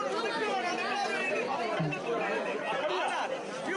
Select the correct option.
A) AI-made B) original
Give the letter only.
B